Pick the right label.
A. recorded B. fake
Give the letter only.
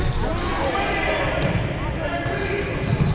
A